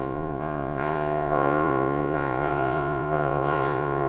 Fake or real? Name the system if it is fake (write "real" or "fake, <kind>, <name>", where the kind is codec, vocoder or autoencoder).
fake, vocoder, Vocos